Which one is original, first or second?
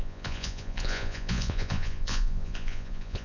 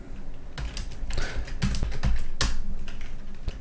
second